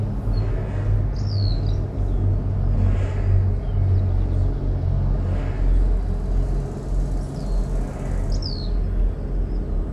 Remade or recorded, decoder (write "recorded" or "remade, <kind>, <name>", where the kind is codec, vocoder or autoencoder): recorded